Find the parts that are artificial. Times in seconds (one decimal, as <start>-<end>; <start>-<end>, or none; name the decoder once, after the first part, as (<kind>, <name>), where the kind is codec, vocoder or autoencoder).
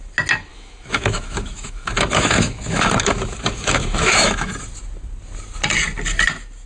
0.5-4.5 (autoencoder, DAC-VAE)